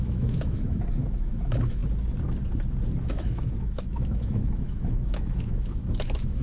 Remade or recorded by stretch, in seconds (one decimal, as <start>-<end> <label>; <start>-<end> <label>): 0.0-1.8 remade; 1.8-3.0 recorded; 3.0-6.4 remade